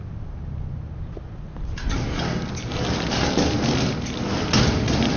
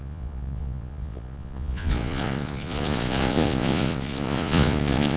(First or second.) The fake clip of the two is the second